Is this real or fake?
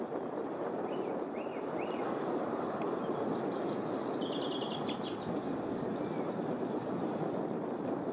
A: real